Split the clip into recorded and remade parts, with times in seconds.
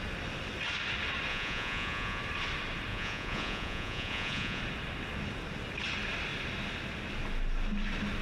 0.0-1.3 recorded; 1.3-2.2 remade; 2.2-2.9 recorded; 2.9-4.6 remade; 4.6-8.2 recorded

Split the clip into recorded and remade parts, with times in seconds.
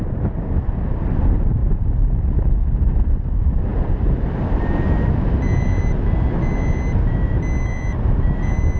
0.0-8.8 recorded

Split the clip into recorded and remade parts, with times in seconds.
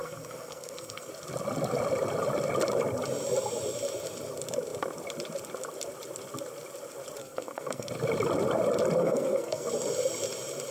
0.0-1.1 remade; 1.1-7.2 recorded; 7.2-7.9 remade; 7.9-9.0 recorded; 9.0-9.7 remade; 9.7-10.7 recorded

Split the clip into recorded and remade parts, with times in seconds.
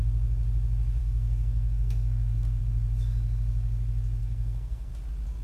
0.0-1.0 recorded; 1.0-2.6 remade; 2.6-4.2 recorded; 4.2-4.9 remade; 4.9-5.4 recorded